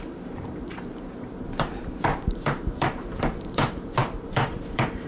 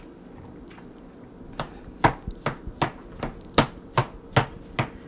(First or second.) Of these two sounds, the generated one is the first